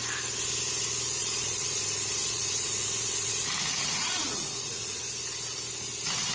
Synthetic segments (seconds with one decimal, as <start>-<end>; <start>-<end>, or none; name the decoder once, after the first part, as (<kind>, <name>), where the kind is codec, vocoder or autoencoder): 1.2-5.0 (vocoder, Vocos)